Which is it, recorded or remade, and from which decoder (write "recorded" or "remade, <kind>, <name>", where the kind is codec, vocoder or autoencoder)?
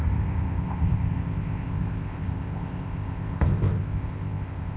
remade, codec, ZipCodec